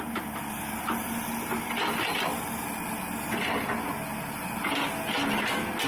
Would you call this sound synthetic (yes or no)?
no